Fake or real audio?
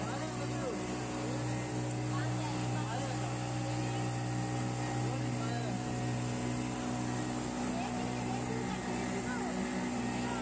real